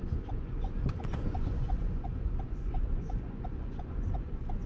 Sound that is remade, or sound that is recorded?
remade